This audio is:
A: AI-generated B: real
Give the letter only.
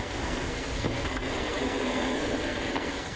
A